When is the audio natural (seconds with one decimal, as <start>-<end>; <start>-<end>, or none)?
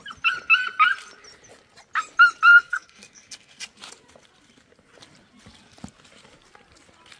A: 0.0-2.5; 3.6-7.2